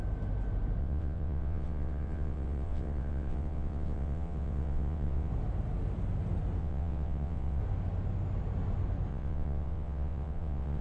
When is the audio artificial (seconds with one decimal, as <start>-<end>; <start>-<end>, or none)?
0.8-5.3; 6.6-7.6; 9.1-10.8